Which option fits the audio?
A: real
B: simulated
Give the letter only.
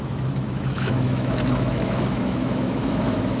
B